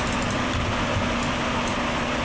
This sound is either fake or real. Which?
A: real